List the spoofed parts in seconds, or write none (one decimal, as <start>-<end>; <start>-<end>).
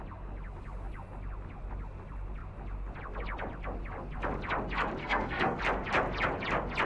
5.0-5.6